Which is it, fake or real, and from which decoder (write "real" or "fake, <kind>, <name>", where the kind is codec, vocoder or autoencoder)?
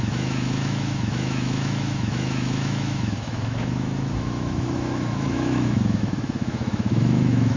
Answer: fake, autoencoder, DAC-VAE